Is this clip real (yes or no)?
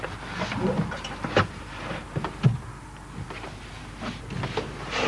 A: yes